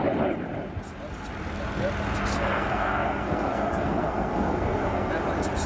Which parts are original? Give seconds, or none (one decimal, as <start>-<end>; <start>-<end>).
0.0-2.3; 5.1-5.7